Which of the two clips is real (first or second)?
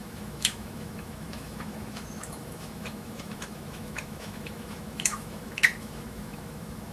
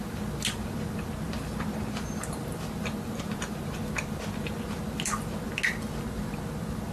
second